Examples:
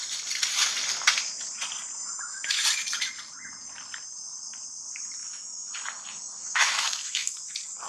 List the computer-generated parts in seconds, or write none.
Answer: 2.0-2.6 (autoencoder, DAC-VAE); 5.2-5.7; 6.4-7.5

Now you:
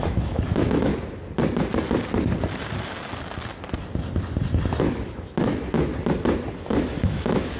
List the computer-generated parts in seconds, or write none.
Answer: 0.0-0.9 (autoencoder, DAC-VAE); 4.8-5.9; 6.9-7.6

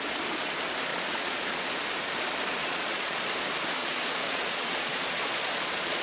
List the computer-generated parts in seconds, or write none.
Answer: 0.9-1.6 (vocoder, Vocos); 2.6-3.2; 3.8-6.0

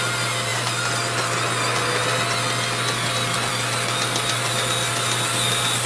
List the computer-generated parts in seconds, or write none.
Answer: none

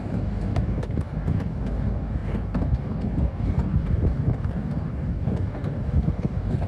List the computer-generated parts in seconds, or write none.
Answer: 0.0-6.7 (codec, DAC)

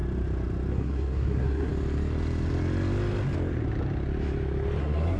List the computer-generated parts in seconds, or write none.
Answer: 0.7-1.7 (codec, SNAC); 4.8-5.2

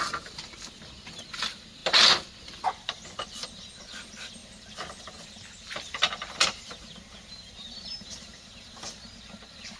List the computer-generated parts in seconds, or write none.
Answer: none

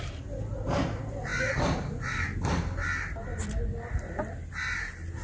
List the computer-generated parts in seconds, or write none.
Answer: none